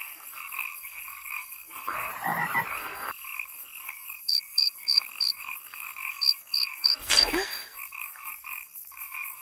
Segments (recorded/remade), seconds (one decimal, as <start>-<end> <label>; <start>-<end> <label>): 0.0-2.1 remade; 2.1-2.7 recorded; 2.7-9.4 remade